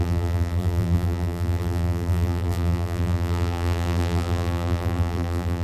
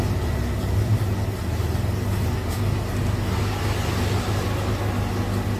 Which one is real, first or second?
second